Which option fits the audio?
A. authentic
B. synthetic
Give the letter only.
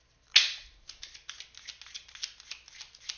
A